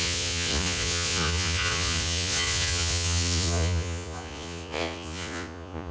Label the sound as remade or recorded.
remade